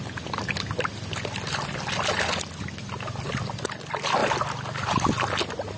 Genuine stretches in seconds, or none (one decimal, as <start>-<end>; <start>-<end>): 0.0-5.8